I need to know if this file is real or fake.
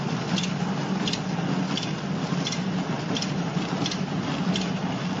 real